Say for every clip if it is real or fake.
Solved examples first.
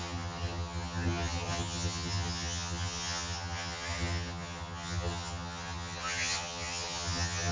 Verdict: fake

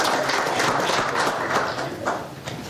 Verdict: real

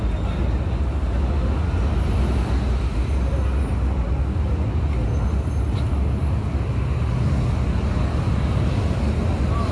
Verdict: real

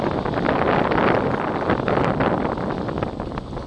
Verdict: real